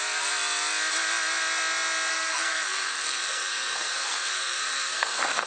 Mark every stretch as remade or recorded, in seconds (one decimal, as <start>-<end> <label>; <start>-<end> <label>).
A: 0.0-2.1 recorded; 2.1-5.5 remade

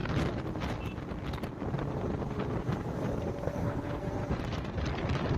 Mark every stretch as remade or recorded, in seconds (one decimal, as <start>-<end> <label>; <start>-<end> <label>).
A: 0.0-3.2 recorded; 3.2-4.2 remade; 4.2-5.4 recorded

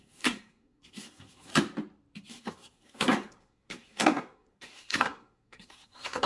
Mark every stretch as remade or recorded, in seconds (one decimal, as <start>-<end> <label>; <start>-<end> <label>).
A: 0.0-1.5 remade; 1.5-2.3 recorded; 2.3-6.3 remade

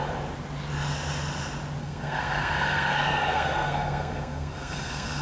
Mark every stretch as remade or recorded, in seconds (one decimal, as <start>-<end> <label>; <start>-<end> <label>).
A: 0.0-1.8 recorded; 1.8-5.2 remade

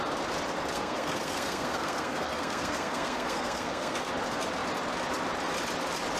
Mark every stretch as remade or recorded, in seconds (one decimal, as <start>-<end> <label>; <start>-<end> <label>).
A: 0.0-0.7 recorded; 0.7-4.1 remade; 4.1-6.2 recorded

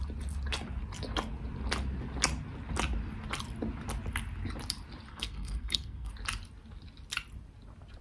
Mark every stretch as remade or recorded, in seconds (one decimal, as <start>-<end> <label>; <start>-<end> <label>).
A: 0.0-5.1 recorded; 5.1-6.1 remade; 6.1-8.0 recorded